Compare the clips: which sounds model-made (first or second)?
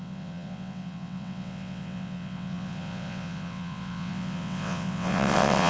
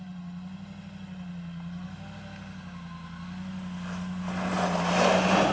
first